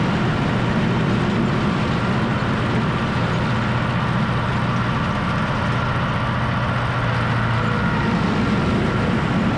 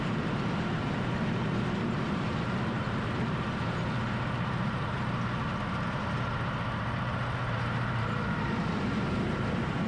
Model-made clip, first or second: second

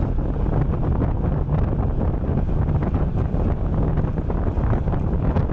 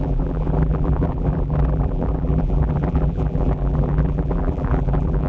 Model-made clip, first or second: second